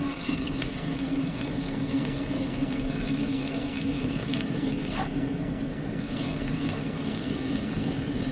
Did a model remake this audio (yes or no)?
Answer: yes